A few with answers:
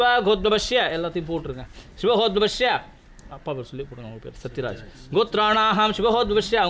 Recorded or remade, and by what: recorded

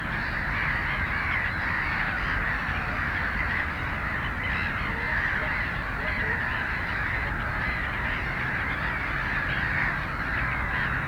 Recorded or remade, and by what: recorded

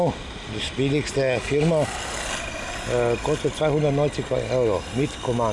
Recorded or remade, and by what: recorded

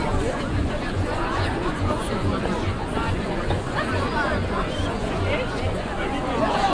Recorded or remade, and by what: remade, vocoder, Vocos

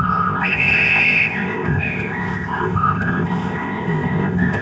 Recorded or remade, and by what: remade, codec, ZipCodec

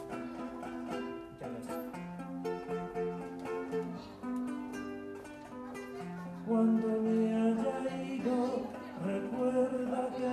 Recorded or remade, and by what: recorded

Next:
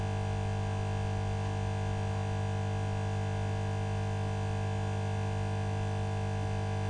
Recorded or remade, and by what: recorded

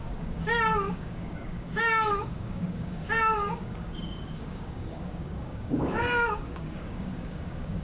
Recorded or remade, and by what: remade, codec, DAC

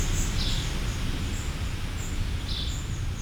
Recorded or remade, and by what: recorded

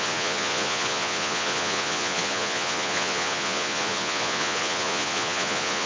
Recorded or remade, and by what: remade, vocoder, Vocos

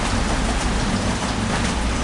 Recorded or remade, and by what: recorded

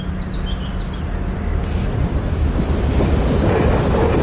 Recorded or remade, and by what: recorded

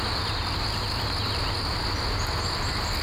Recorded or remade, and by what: recorded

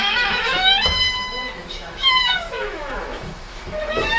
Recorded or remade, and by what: remade, autoencoder, DAC-VAE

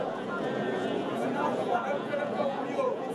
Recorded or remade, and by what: remade, vocoder, Vocos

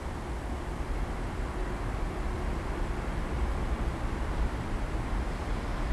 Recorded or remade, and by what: remade, vocoder, BigVGAN v2